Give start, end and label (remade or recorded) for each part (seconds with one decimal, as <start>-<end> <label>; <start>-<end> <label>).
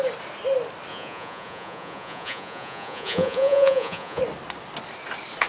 0.0-0.9 recorded; 0.9-4.2 remade; 4.2-5.5 recorded